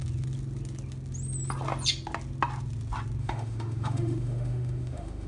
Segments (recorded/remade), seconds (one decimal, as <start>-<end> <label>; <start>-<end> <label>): 0.0-3.2 recorded; 3.2-5.3 remade